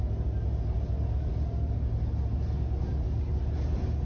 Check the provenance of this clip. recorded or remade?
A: recorded